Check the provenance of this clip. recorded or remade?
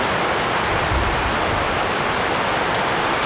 recorded